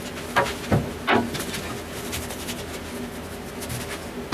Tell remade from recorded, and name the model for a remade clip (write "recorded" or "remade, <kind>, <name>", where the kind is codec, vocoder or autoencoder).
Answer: recorded